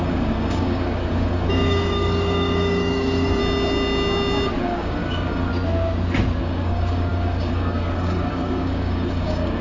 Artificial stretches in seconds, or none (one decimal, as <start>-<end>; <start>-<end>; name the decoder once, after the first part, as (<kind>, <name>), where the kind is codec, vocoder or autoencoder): 0.0-3.4 (codec, DAC); 4.6-5.5; 6.4-9.6